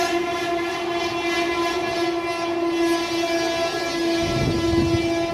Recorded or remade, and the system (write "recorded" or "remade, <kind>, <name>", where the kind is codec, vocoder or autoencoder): recorded